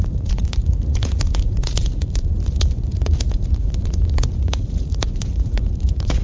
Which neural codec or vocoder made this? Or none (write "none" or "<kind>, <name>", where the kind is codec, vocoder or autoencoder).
vocoder, Vocos